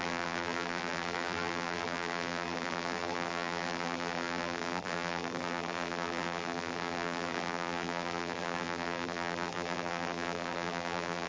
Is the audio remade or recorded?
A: remade